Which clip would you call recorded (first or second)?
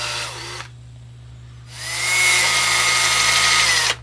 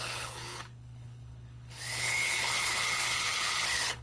first